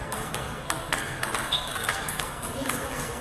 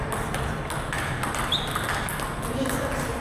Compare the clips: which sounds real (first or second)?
second